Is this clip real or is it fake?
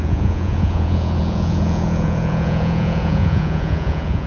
fake